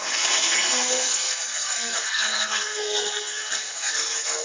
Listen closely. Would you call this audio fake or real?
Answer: fake